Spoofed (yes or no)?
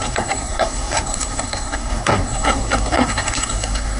yes